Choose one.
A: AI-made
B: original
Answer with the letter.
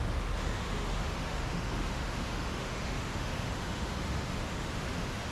A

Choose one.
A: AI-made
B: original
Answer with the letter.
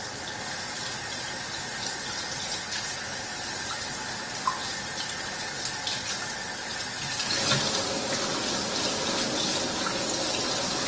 B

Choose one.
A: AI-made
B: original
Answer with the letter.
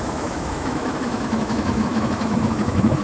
A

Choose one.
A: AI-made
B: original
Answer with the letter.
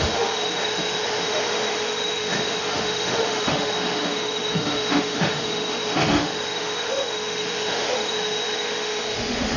A